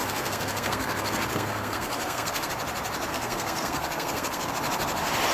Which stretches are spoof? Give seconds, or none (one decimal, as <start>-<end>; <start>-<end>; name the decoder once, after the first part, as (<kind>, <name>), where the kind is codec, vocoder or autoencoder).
0.0-2.5 (codec, SNAC); 3.1-4.5